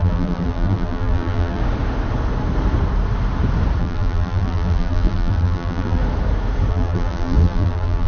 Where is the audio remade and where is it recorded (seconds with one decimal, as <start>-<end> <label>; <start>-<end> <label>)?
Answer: 0.0-1.6 remade; 1.6-3.8 recorded; 3.8-6.0 remade; 6.0-6.7 recorded; 6.7-8.1 remade